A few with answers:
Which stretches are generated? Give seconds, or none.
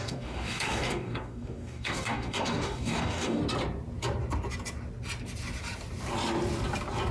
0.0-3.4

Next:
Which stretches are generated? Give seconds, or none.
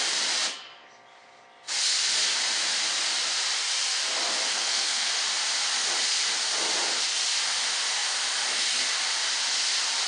4.5-5.1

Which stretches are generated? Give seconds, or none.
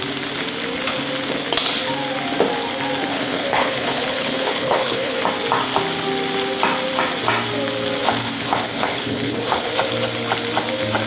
3.1-5.2; 8.2-9.7